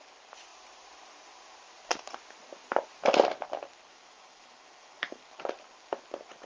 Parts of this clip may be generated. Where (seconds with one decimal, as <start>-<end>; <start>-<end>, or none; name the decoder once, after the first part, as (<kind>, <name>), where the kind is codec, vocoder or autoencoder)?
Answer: 3.9-5.3 (autoencoder, DAC-VAE)